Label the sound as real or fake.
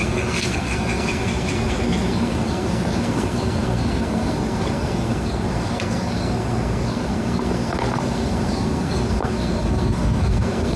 fake